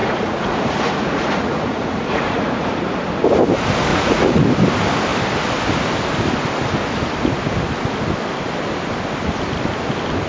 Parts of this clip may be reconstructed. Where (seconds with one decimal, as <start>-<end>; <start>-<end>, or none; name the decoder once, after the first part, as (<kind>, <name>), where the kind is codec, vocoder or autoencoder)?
0.0-2.7 (vocoder, Vocos); 3.9-4.4